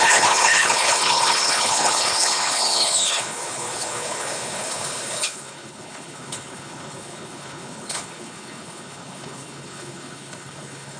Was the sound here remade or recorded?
remade